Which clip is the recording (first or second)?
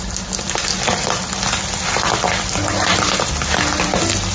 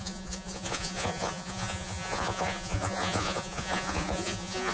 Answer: first